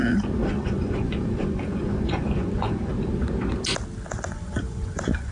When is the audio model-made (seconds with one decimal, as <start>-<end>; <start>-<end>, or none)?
0.4-2.9; 4.1-5.3